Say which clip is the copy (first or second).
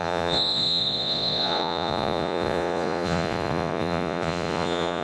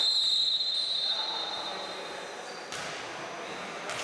first